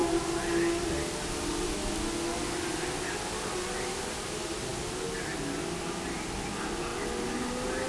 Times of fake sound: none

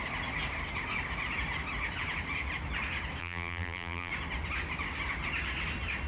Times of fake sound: 3.2-4.1

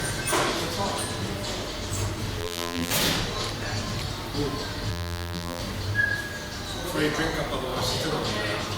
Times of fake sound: 2.4-2.9; 4.9-5.6

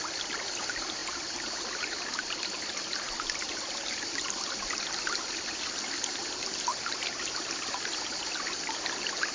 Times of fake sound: none

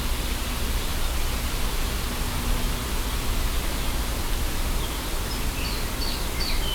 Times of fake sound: none